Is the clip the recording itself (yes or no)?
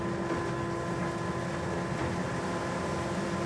yes